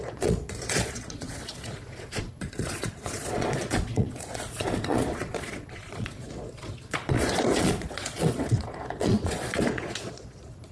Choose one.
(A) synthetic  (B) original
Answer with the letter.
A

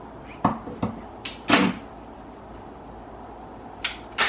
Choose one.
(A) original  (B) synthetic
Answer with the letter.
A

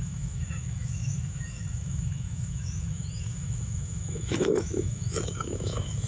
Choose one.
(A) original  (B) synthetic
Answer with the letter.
B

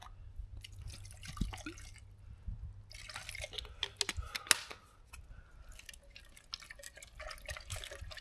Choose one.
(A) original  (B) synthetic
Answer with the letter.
A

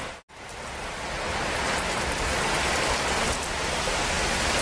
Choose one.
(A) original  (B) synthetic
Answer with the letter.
A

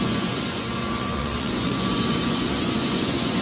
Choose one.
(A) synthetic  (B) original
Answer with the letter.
A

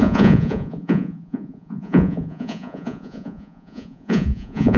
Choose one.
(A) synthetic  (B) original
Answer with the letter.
A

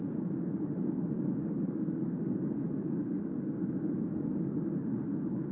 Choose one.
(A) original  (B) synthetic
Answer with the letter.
B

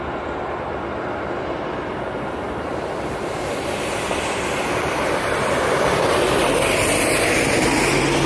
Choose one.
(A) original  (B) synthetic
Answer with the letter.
A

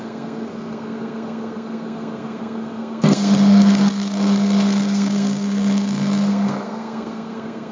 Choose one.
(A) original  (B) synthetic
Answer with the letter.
B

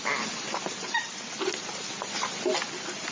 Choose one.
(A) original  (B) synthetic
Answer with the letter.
A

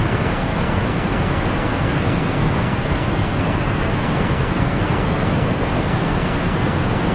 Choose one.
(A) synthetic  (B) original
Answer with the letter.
A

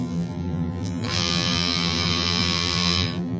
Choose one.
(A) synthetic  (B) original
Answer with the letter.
A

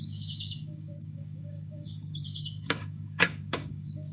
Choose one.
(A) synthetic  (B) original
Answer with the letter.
A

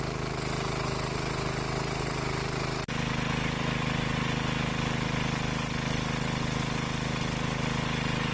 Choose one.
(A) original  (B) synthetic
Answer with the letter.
A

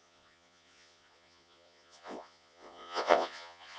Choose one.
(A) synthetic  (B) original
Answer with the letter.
A